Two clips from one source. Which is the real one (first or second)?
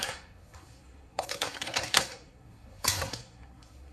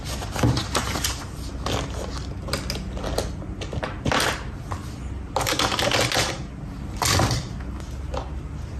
second